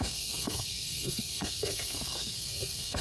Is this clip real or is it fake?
fake